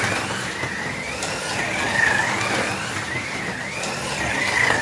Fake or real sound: real